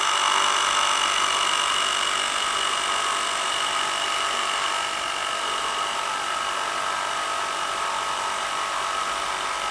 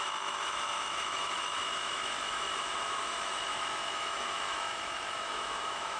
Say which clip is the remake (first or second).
second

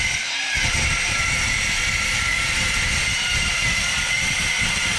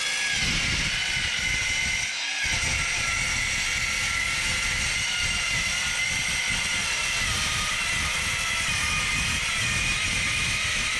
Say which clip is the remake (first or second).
first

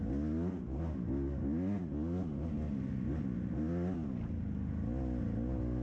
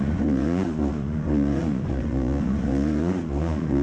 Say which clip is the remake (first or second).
second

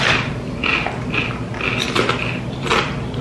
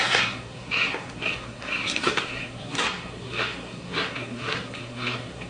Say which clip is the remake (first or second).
second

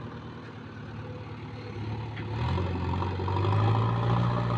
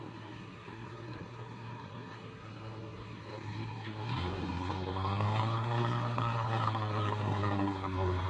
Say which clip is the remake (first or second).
second